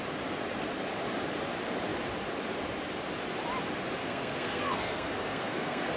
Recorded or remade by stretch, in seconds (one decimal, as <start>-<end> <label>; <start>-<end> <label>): 0.0-4.0 recorded; 4.0-6.0 remade